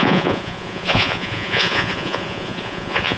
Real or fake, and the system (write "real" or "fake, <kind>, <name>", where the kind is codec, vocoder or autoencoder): fake, vocoder, Vocos